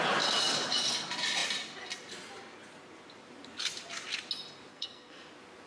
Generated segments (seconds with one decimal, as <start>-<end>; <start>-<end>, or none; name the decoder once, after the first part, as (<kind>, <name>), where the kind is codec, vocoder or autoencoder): 4.7-5.3 (codec, SNAC)